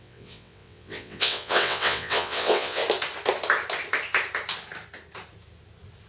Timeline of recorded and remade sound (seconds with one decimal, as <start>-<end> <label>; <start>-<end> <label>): 0.0-2.8 remade; 2.8-6.1 recorded